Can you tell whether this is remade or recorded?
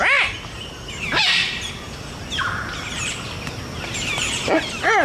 recorded